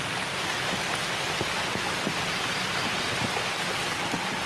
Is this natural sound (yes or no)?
yes